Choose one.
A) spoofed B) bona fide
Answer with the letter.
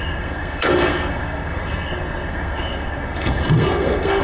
A